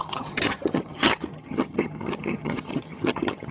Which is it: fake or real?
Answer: fake